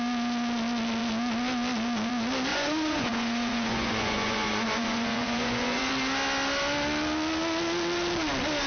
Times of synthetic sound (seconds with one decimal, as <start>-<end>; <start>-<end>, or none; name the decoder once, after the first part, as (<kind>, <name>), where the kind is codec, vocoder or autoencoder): 2.5-5.9 (vocoder, Vocos)